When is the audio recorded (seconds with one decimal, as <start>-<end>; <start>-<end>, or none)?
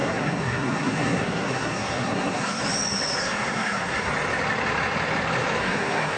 2.6-3.2; 4.1-5.6